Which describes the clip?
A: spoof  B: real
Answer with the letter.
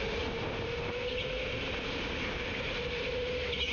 B